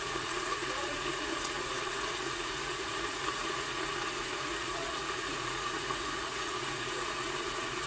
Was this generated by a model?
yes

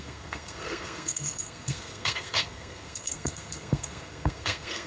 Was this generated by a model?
yes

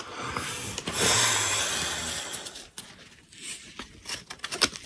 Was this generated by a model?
no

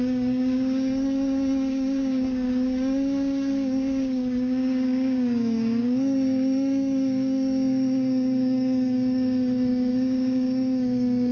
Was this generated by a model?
yes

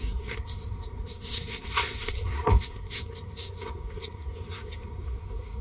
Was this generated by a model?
yes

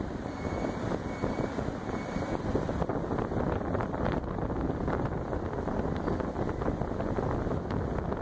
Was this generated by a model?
no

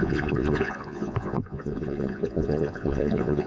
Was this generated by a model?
yes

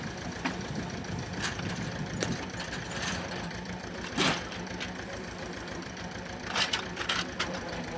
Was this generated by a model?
yes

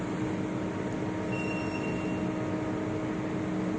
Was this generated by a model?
no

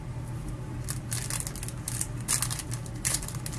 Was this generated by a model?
no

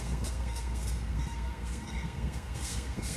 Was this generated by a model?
yes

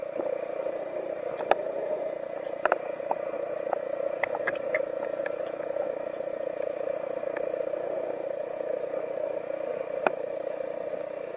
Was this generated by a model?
no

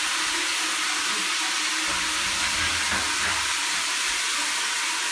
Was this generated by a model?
no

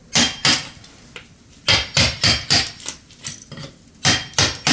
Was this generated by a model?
no